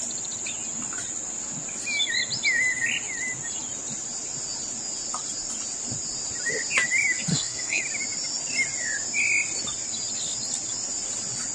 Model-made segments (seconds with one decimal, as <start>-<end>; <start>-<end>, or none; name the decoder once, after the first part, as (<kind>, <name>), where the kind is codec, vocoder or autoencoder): 7.3-7.8 (codec, SNAC)

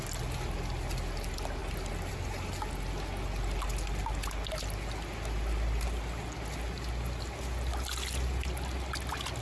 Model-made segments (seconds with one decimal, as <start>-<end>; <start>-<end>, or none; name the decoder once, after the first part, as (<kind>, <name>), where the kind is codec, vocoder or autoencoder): none

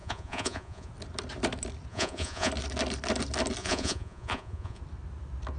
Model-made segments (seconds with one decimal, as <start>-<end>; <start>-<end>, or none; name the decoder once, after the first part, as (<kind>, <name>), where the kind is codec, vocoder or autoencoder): 0.0-0.9 (vocoder, Vocos); 1.9-2.5; 3.6-4.8

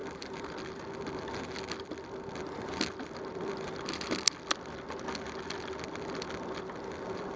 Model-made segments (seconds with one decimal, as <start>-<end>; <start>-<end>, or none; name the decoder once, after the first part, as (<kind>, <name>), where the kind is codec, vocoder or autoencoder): 0.0-4.4 (vocoder, BigVGAN v2)

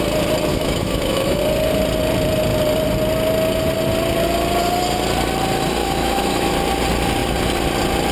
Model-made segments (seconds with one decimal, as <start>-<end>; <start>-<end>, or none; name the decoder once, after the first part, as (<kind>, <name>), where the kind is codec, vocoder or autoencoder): 0.5-1.4 (autoencoder, DAC-VAE); 5.8-6.5

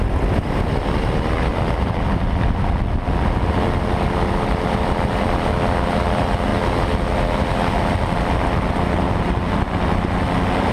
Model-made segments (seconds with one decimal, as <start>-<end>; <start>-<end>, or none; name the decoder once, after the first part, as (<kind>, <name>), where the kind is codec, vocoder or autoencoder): 1.5-5.5 (vocoder, BigVGAN v2)